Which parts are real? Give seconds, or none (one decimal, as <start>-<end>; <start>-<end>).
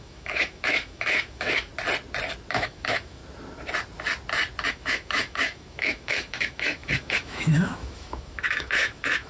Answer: 1.7-2.5; 3.2-4.7